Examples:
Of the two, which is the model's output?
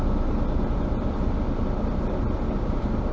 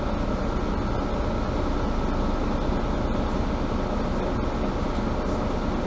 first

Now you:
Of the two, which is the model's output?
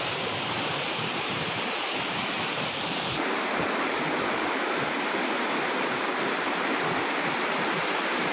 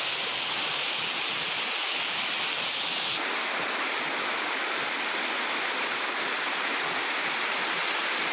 first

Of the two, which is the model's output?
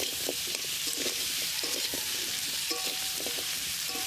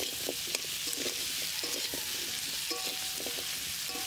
first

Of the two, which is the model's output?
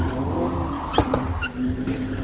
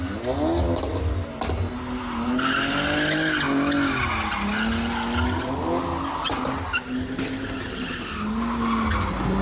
first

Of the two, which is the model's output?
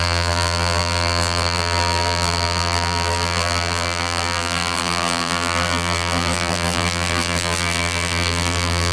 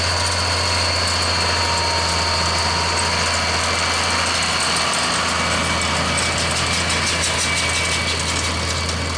first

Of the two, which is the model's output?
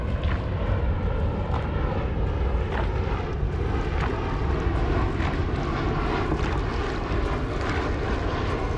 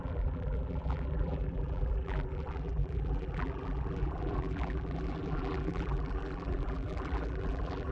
second